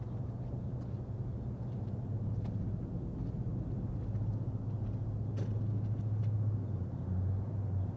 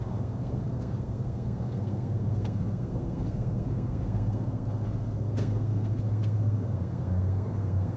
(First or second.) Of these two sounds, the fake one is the second